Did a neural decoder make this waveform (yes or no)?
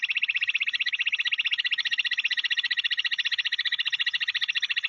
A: yes